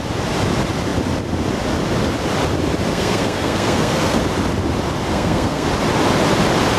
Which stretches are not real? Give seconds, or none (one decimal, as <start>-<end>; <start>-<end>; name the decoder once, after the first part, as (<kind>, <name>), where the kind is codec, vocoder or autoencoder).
2.9-4.2 (codec, SNAC); 5.1-5.7